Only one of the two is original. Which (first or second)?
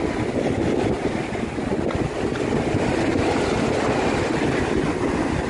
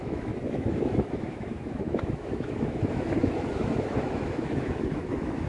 first